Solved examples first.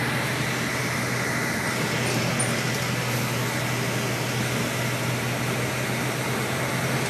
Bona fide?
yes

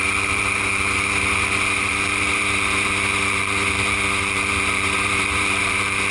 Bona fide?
no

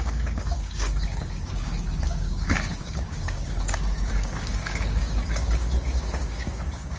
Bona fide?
no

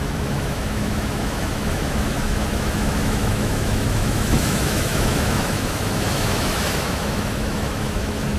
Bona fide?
no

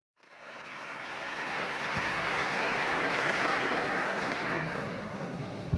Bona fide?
no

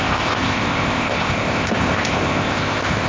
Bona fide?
no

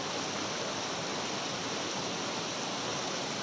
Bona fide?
yes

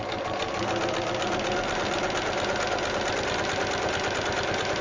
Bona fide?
yes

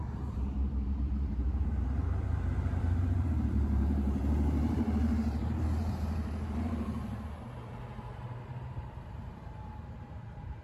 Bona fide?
no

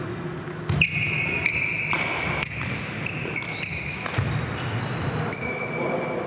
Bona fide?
yes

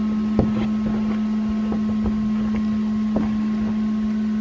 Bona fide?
yes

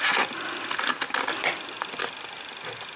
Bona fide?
yes